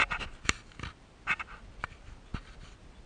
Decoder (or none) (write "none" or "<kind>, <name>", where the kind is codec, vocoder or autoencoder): none